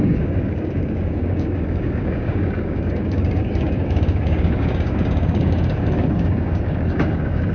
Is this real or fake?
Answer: fake